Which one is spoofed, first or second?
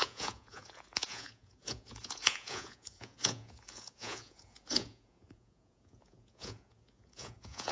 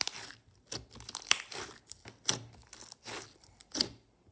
first